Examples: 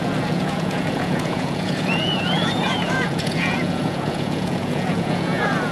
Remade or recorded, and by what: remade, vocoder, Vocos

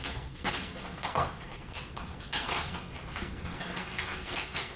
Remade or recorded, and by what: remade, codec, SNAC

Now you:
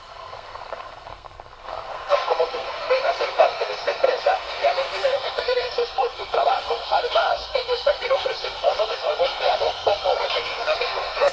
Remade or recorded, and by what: remade, codec, SNAC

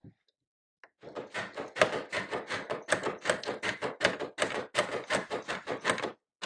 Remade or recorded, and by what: recorded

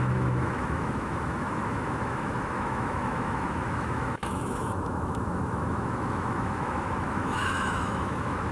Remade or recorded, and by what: remade, autoencoder, DAC-VAE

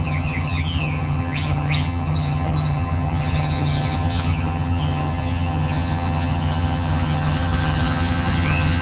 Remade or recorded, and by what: remade, vocoder, HiFi-GAN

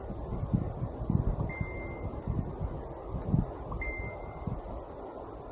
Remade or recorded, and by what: recorded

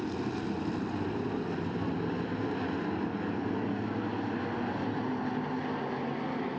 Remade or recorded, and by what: recorded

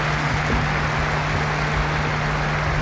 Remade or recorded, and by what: recorded